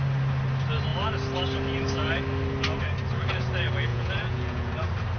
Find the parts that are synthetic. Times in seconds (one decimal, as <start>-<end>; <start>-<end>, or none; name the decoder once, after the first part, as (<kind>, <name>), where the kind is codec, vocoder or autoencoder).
3.9-4.7 (vocoder, Vocos)